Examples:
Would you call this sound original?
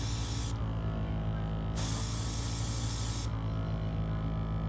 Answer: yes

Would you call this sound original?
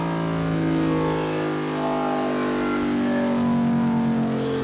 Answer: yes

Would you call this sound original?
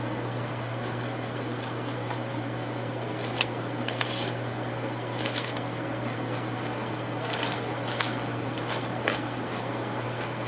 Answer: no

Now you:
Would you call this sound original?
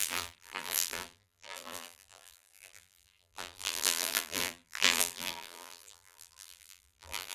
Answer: no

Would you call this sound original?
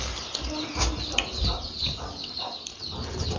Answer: yes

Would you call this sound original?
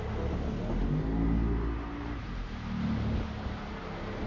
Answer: yes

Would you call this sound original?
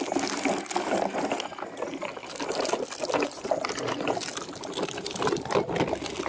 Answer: yes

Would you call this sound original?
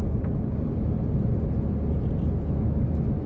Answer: yes